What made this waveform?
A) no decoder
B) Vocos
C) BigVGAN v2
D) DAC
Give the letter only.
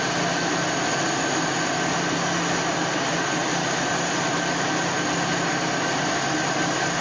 A